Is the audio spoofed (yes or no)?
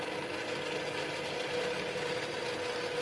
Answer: no